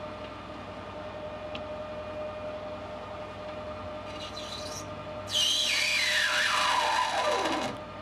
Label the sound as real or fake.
real